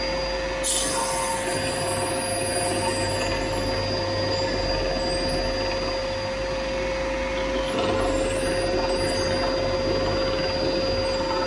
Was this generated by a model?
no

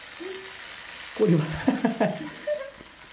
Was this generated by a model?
no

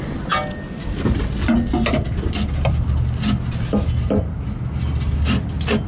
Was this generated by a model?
no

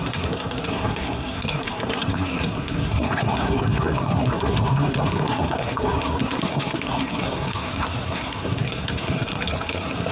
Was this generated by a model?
yes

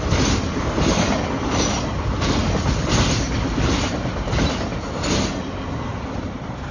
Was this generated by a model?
no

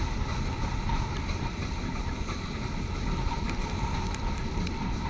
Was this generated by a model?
no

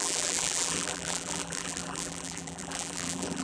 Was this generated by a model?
yes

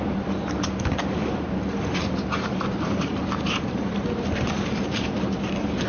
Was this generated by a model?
yes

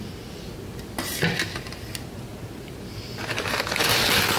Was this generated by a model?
no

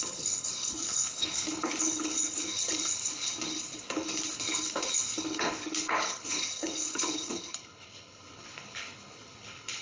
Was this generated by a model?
yes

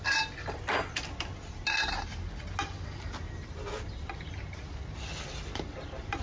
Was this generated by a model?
no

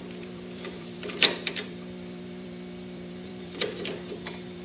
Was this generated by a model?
yes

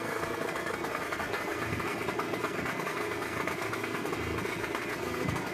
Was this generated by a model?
yes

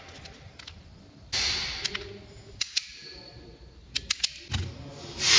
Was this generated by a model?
no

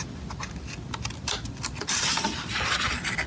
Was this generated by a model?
no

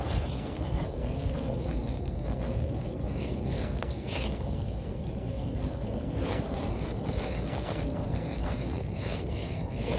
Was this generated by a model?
yes